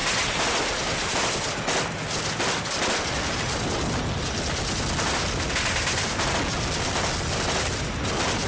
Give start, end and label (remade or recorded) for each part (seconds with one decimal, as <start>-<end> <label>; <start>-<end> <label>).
0.0-8.5 recorded